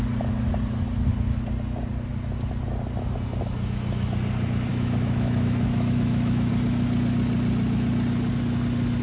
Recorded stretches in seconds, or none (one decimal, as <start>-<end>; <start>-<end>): 0.0-4.7; 6.5-9.0